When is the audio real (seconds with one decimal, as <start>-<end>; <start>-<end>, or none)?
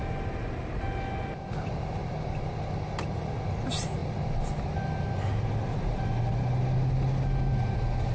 0.0-8.1